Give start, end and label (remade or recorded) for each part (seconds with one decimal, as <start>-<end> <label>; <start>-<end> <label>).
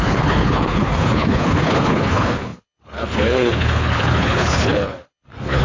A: 0.0-5.6 remade